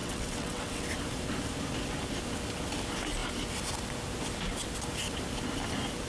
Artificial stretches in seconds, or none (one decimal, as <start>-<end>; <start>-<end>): 0.0-0.8